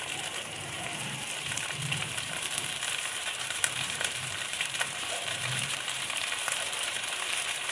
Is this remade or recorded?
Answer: remade